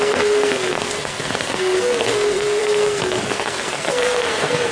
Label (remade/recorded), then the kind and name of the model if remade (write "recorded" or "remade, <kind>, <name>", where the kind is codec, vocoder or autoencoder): remade, codec, SNAC